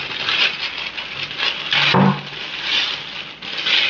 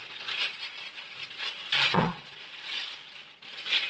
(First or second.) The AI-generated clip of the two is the second